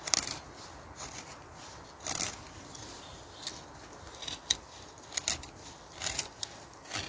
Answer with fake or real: real